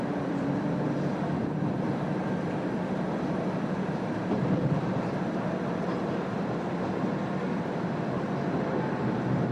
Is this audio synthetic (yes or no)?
yes